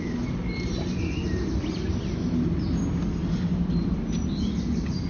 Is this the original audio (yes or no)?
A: yes